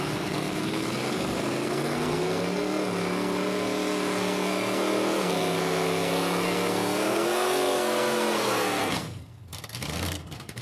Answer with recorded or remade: remade